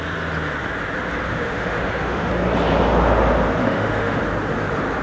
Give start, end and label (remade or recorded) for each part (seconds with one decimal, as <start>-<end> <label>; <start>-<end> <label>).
0.0-1.3 recorded; 1.3-2.3 remade; 2.3-3.6 recorded; 3.6-4.2 remade; 4.2-5.0 recorded